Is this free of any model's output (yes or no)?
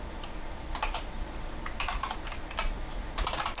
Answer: no